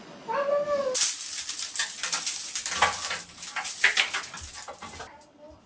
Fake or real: real